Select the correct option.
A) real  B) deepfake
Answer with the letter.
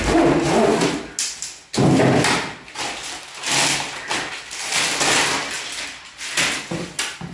A